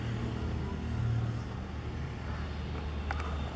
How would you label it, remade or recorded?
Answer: recorded